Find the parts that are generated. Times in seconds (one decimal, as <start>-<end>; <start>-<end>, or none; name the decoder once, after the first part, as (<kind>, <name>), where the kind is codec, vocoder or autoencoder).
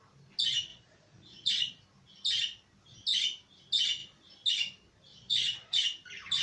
0.7-1.5 (vocoder, Vocos); 5.1-5.8